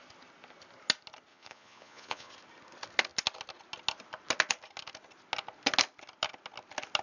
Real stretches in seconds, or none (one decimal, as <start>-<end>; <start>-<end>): 0.0-1.3; 2.3-7.0

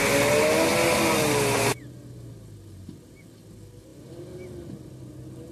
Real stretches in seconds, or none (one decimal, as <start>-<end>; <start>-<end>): 0.0-5.5

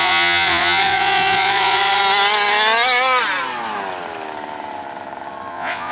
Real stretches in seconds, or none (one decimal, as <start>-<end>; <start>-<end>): 2.0-5.5

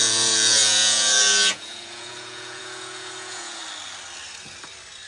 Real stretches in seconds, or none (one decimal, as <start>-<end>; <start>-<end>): 3.6-5.1

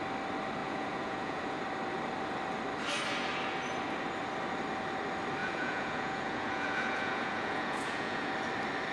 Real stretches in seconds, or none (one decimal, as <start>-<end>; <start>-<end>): 0.0-0.6; 1.6-5.4; 8.3-8.9

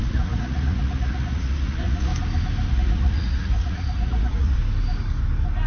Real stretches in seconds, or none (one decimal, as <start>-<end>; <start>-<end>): 2.1-2.7; 4.6-5.7

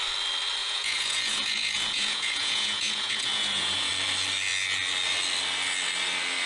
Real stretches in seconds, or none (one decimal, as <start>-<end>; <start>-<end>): 0.0-0.6; 3.9-6.5

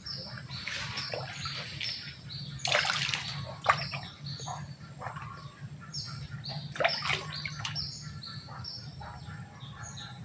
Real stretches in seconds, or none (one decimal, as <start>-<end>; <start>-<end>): 0.0-10.2